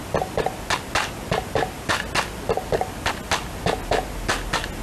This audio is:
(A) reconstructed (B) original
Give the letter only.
B